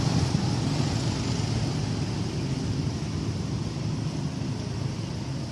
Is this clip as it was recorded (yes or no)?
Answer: yes